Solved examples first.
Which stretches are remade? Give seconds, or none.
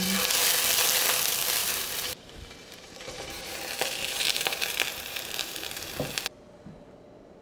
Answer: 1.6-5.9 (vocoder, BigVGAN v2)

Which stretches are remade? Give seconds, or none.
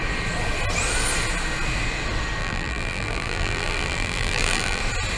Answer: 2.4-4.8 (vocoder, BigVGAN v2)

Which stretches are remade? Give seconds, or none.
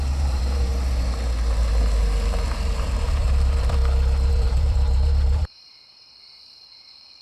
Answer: 0.0-0.7 (vocoder, BigVGAN v2); 2.5-3.8; 4.3-7.2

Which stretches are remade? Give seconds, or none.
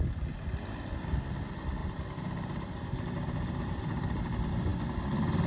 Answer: 1.8-4.2 (vocoder, BigVGAN v2)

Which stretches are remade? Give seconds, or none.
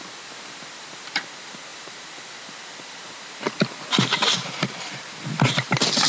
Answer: none